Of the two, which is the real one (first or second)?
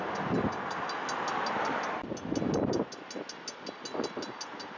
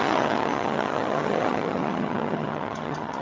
first